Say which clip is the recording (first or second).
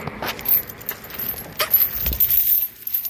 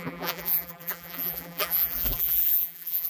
first